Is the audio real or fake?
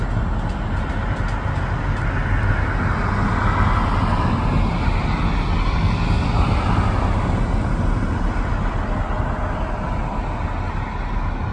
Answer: real